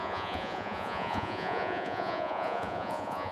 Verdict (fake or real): fake